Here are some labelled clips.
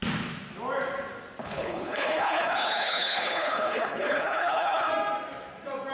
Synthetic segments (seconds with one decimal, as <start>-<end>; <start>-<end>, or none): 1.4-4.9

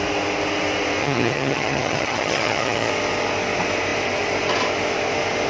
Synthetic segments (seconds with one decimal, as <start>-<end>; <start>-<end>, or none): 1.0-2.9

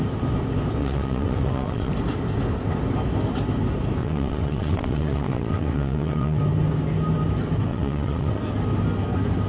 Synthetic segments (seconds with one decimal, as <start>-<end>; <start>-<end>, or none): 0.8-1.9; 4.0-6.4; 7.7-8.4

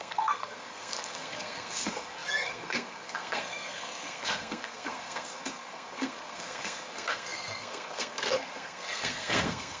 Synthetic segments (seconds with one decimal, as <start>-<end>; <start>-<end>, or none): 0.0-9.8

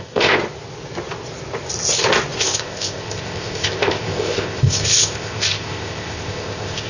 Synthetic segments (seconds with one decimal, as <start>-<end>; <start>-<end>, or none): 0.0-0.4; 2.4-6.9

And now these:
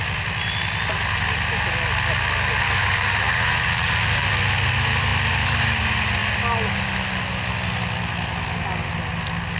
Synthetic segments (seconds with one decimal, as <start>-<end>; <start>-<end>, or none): none

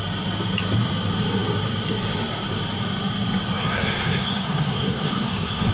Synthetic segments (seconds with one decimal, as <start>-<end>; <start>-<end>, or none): 3.6-5.7

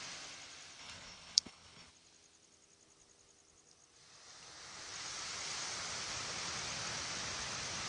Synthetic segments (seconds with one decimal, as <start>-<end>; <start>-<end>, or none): 0.8-1.9